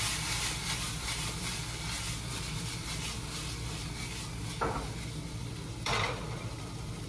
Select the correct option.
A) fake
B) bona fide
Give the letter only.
B